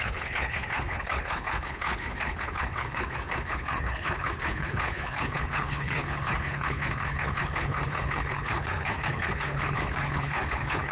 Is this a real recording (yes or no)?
no